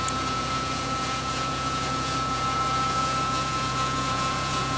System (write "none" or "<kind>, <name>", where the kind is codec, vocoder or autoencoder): vocoder, Vocos